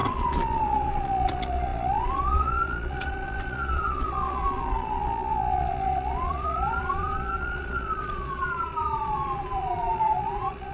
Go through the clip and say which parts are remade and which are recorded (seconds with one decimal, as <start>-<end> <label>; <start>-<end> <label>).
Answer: 0.0-10.7 remade